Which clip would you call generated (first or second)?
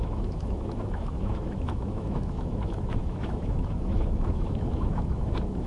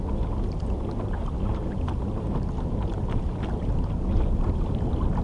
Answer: first